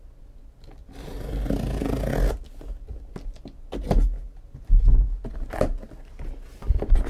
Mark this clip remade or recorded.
recorded